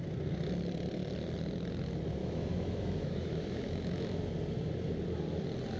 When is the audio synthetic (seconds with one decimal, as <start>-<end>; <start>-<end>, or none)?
2.2-4.2